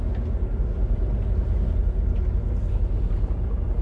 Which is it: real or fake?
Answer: real